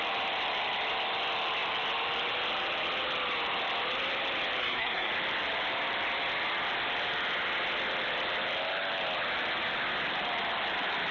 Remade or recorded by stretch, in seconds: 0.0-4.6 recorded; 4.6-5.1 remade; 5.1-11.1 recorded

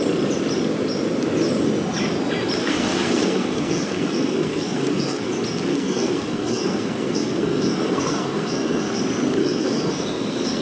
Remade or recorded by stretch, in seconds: 0.0-2.6 recorded; 2.6-5.3 remade; 5.3-5.7 recorded; 5.7-9.0 remade; 9.0-9.4 recorded; 9.4-10.6 remade

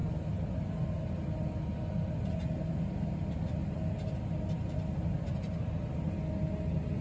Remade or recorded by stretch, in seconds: 0.0-7.0 recorded

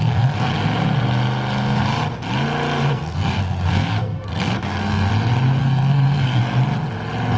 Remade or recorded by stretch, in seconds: 0.0-0.5 remade; 0.5-2.9 recorded; 2.9-5.1 remade; 5.1-5.6 recorded; 5.6-6.4 remade; 6.4-7.4 recorded

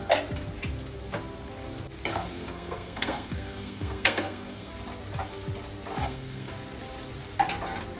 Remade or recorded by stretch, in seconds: 0.0-2.1 recorded; 2.1-4.7 remade; 4.7-6.0 recorded; 6.0-6.5 remade; 6.5-8.0 recorded